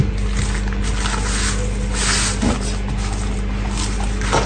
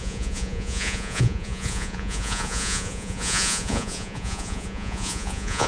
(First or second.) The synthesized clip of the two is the second